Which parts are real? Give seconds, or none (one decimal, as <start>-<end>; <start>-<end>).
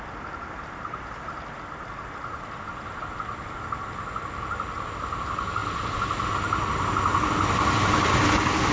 0.0-8.7